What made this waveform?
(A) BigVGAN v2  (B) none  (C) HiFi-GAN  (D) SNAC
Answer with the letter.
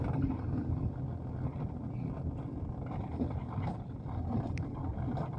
B